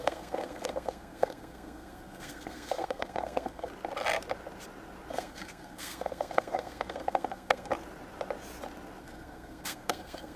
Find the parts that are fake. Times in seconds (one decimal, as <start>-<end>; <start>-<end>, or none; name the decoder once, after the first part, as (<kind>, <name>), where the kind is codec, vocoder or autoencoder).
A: 0.0-3.7 (codec, SNAC); 5.1-7.7; 9.0-10.4